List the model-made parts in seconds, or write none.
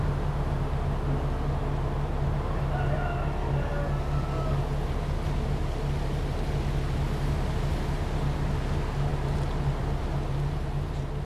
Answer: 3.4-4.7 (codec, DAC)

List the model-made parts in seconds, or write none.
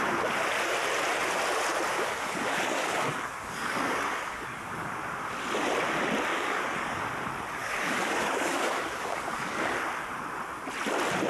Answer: 1.9-5.0 (codec, DAC); 6.3-7.0; 7.6-9.8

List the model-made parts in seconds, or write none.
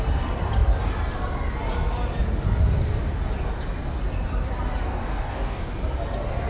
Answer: 4.8-5.6 (codec, DAC)